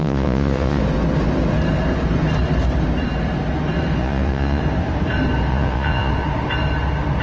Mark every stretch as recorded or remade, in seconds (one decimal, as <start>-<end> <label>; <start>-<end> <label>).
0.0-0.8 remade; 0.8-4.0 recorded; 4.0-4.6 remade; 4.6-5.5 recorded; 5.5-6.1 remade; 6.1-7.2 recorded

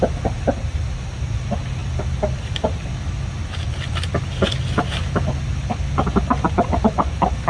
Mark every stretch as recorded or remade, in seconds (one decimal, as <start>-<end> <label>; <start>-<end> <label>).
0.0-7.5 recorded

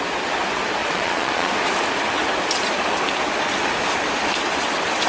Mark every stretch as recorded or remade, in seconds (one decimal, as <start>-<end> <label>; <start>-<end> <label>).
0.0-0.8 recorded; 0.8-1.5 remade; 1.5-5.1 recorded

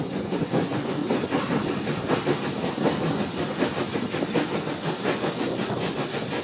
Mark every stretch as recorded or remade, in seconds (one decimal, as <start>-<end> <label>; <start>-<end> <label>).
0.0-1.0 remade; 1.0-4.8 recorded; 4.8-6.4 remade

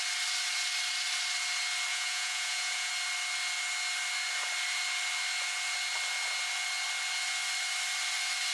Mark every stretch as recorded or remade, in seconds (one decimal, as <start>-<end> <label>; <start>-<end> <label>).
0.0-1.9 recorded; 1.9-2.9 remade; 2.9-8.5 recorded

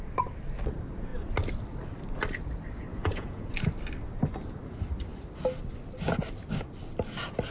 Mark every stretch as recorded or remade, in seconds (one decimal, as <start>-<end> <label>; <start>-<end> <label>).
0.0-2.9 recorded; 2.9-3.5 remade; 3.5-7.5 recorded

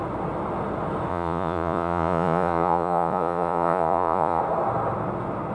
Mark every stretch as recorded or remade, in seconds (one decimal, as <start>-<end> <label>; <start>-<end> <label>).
0.0-1.1 recorded; 1.1-4.4 remade; 4.4-5.5 recorded

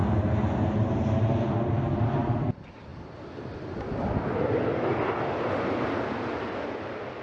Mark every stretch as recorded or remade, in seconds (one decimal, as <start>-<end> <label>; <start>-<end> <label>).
0.0-7.2 recorded